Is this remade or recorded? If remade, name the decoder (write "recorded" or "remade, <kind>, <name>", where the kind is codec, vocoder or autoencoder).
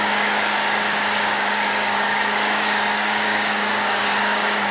remade, codec, DAC